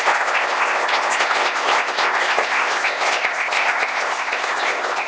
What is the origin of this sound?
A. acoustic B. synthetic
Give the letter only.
B